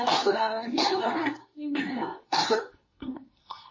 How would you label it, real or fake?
fake